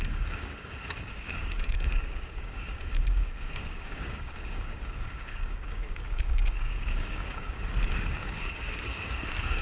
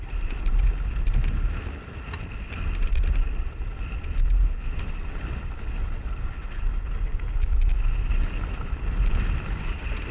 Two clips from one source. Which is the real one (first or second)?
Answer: second